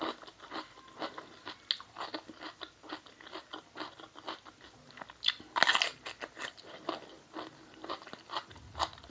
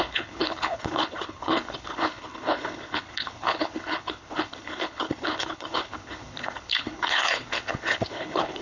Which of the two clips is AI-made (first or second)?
second